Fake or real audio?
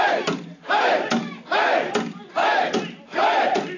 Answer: fake